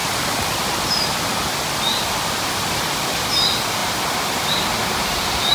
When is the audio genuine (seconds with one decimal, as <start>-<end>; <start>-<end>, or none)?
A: 0.0-5.5